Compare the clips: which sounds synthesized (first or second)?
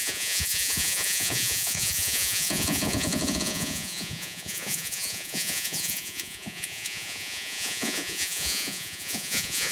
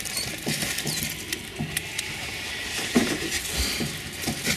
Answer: first